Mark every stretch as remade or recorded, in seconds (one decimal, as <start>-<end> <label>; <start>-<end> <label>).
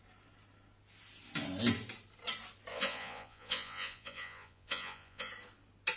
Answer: 0.0-2.7 recorded; 2.7-5.3 remade; 5.3-6.0 recorded